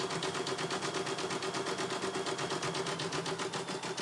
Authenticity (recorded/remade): recorded